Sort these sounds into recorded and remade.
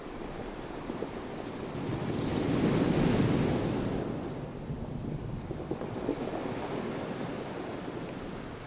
recorded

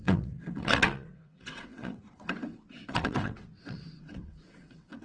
remade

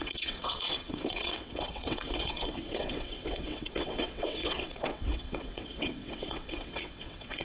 remade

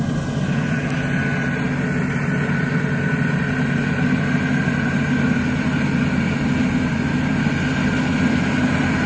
recorded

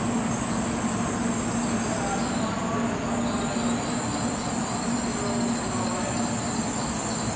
recorded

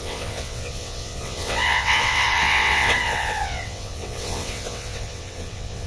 remade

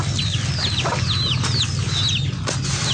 recorded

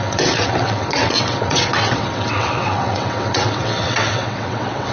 remade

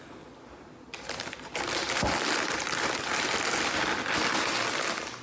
recorded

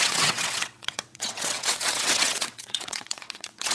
remade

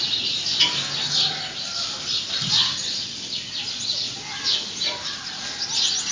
recorded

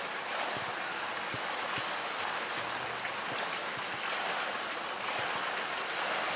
recorded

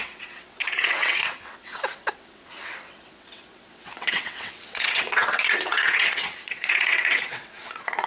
remade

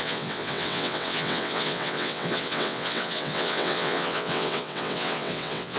remade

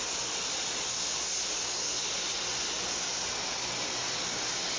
recorded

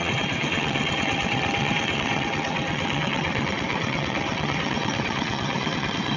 remade